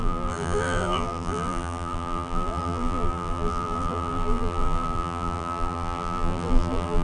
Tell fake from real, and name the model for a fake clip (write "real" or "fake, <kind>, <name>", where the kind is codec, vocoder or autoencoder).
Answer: fake, vocoder, BigVGAN v2